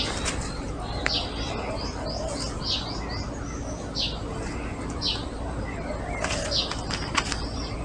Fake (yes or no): no